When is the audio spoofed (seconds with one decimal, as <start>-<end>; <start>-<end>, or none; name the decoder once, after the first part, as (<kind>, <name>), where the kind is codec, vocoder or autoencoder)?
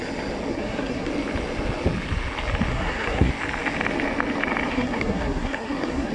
0.5-1.1 (codec, SNAC); 2.7-3.3; 4.7-6.1